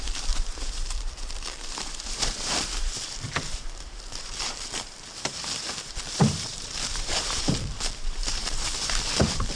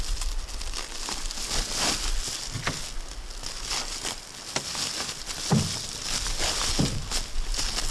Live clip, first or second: second